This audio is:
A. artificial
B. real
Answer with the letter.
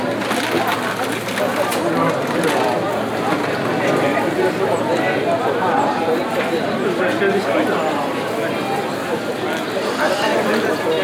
B